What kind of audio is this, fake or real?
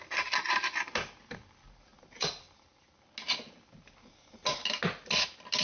real